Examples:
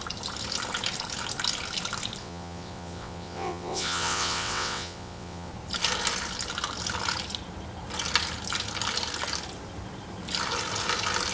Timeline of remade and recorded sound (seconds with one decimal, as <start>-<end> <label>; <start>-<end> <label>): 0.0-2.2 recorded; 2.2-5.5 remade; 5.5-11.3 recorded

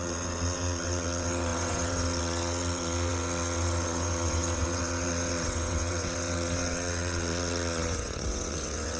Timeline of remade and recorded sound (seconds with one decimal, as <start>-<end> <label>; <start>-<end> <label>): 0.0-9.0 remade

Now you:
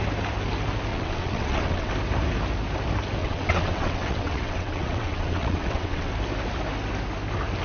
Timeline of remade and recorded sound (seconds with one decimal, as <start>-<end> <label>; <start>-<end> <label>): 0.0-0.9 recorded; 0.9-1.9 remade; 1.9-3.2 recorded; 3.2-6.1 remade; 6.1-7.6 recorded

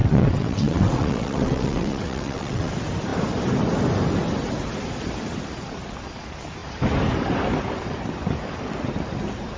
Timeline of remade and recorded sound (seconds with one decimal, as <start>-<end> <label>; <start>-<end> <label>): 0.0-2.7 remade; 2.7-9.6 recorded

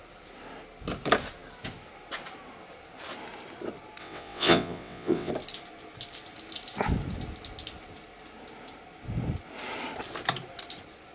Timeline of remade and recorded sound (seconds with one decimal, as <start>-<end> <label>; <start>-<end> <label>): 0.0-4.0 recorded; 4.0-5.3 remade; 5.3-11.1 recorded

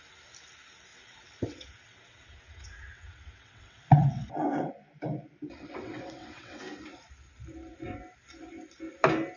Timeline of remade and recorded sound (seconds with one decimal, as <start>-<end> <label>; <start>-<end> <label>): 0.0-0.9 recorded; 0.9-4.7 remade; 4.7-5.7 recorded; 5.7-6.6 remade; 6.6-9.4 recorded

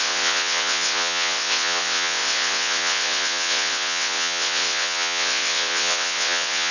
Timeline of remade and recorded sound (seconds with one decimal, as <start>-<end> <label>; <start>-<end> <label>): 0.0-6.7 remade

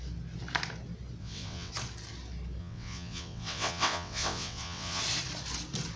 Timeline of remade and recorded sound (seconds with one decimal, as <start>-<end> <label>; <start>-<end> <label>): 0.0-1.2 recorded; 1.2-1.7 remade; 1.7-2.6 recorded; 2.6-5.0 remade; 5.0-6.0 recorded